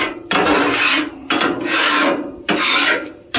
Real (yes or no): no